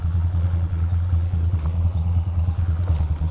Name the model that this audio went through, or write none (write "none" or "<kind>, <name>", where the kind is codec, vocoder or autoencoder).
vocoder, Vocos